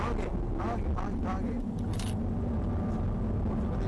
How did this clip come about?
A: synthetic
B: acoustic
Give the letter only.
B